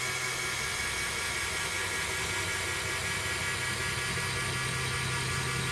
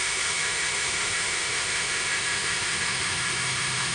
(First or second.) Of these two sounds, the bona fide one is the first